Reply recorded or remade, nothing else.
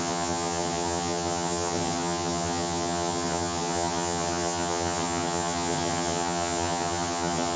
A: remade